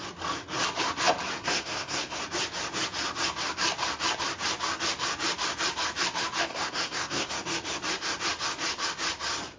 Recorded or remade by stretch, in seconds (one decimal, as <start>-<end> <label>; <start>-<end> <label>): 0.0-1.4 recorded; 1.4-2.2 remade; 2.2-6.5 recorded; 6.5-7.3 remade; 7.3-9.6 recorded